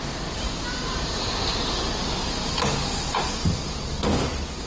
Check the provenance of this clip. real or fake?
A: real